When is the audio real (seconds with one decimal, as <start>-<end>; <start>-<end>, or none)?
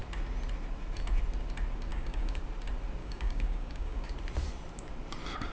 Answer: 0.0-1.9; 2.4-3.0; 4.1-5.5